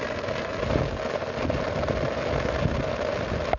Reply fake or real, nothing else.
real